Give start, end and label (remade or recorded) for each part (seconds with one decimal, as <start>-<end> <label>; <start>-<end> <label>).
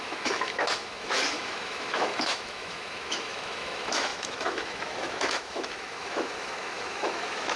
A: 0.0-7.6 remade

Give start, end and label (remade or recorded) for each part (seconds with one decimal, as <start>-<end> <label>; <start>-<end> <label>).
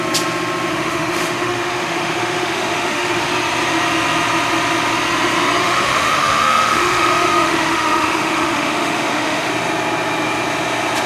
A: 0.0-0.7 recorded; 0.7-3.3 remade; 3.3-5.6 recorded; 5.6-9.5 remade; 9.5-11.1 recorded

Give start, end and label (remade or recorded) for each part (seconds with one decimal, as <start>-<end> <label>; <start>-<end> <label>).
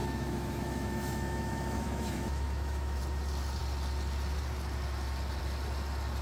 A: 0.0-3.0 remade; 3.0-6.2 recorded